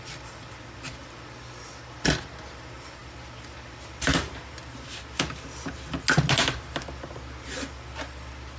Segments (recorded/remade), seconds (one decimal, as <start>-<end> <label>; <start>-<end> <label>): 0.0-8.6 recorded